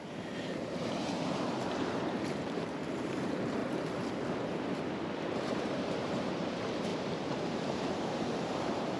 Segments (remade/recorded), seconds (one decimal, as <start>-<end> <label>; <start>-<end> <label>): 0.0-3.6 remade; 3.6-5.5 recorded; 5.5-9.0 remade